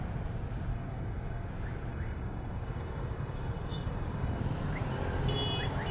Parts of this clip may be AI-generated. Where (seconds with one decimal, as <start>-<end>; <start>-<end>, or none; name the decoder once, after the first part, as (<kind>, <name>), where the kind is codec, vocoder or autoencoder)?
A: 0.7-1.5 (codec, DAC); 1.9-4.4